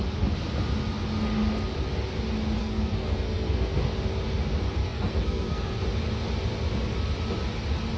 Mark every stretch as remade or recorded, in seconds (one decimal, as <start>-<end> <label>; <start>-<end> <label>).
0.0-2.6 recorded; 2.6-3.8 remade; 3.8-4.8 recorded; 4.8-5.8 remade; 5.8-8.0 recorded